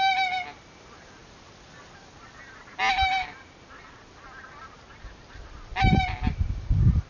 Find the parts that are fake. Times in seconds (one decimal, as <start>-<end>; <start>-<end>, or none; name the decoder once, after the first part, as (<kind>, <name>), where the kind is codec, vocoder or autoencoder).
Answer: none